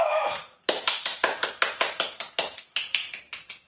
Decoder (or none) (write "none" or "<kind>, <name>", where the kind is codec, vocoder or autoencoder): vocoder, BigVGAN v2